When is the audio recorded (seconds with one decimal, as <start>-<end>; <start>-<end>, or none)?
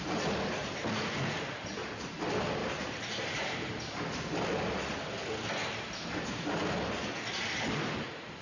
0.0-2.6; 3.7-8.4